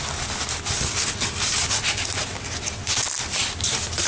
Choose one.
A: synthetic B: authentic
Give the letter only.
B